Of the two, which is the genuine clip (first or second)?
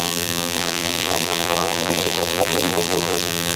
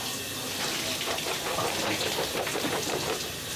second